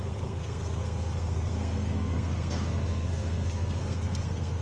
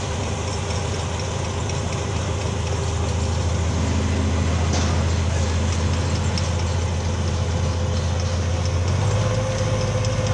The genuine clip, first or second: second